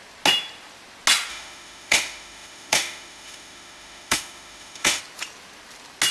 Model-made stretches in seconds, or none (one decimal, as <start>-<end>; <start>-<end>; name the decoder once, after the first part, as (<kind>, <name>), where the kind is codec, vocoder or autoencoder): 1.3-5.0 (autoencoder, DAC-VAE)